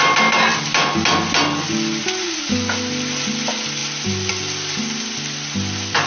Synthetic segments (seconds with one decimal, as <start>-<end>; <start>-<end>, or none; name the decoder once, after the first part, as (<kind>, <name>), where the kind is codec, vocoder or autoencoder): none